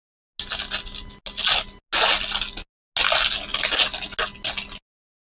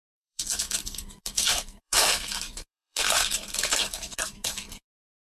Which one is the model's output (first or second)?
second